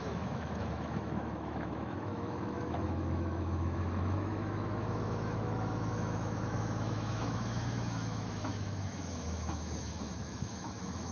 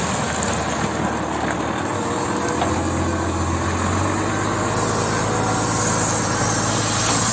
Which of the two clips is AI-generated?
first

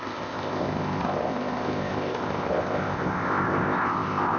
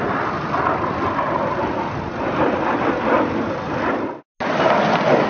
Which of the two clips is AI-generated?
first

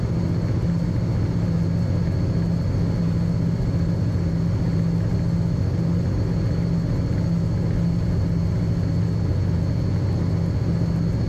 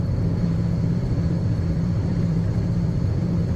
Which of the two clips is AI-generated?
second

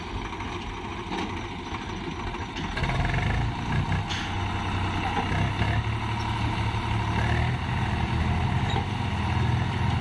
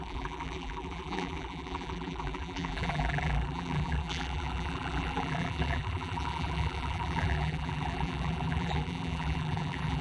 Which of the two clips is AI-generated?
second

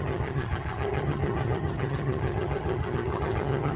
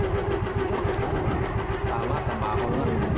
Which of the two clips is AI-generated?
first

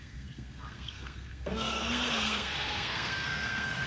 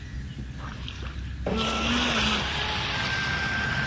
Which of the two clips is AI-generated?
first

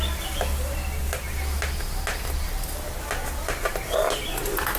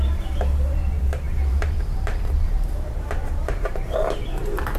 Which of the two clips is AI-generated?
second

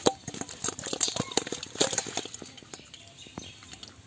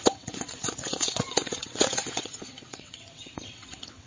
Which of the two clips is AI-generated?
second